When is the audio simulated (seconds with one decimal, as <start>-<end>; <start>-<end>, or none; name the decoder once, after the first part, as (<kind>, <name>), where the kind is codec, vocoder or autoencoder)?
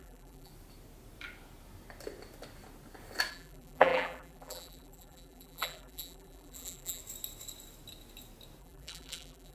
0.0-0.5 (vocoder, BigVGAN v2); 3.3-7.0; 8.6-9.5